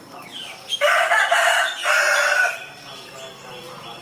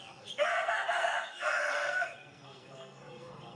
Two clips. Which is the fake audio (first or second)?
second